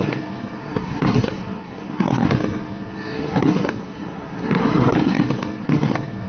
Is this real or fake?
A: fake